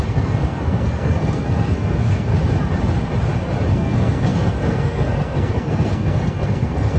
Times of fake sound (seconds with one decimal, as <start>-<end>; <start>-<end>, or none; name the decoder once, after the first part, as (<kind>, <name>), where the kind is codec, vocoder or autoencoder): 0.0-2.3 (codec, SNAC); 3.7-7.0